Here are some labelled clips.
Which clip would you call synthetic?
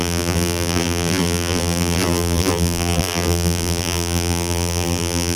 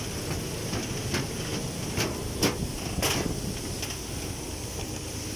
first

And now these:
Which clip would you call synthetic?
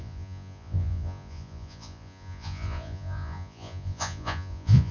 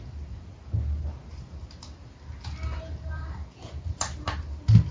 first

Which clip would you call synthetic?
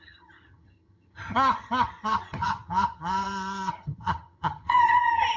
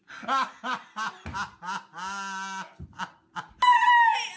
first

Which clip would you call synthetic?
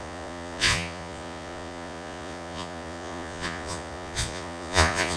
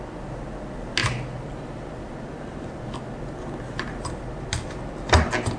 first